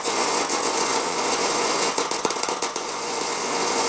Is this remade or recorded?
remade